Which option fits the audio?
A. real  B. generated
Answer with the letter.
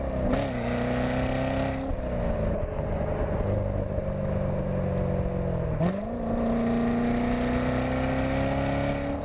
A